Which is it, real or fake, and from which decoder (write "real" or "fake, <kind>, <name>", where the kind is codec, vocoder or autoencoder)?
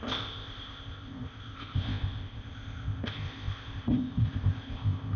fake, codec, ZipCodec